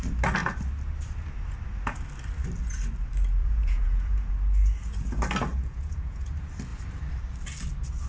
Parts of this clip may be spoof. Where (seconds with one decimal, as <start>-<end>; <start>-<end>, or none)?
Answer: 3.4-4.3; 5.5-6.3